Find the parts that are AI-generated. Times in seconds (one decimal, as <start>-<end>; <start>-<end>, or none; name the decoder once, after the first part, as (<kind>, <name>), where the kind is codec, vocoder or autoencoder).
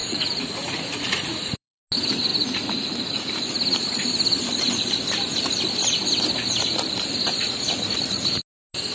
0.0-1.8 (vocoder, Vocos)